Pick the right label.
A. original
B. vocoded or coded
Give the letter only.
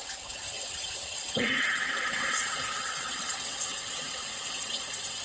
B